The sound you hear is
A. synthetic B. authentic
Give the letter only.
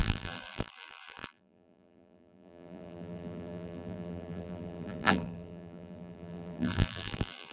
A